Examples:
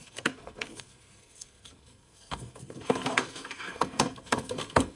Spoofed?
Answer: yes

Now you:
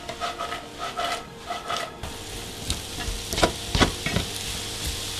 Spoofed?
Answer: no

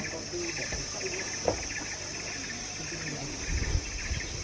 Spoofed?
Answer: no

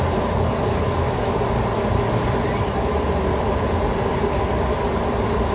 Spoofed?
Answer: yes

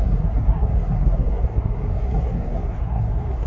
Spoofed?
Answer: yes